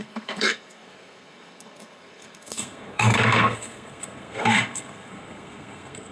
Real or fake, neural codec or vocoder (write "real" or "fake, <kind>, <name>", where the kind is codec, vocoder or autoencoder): fake, codec, SNAC